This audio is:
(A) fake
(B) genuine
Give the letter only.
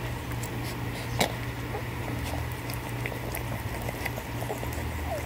B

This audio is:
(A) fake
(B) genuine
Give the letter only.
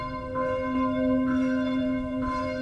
A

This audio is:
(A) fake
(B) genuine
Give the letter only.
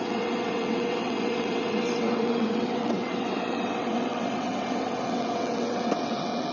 A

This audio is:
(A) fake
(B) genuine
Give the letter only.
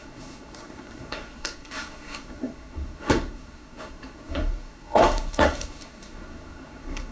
A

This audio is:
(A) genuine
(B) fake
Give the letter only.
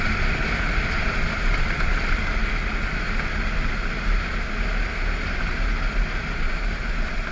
A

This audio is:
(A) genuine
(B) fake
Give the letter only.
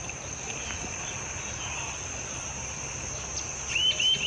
A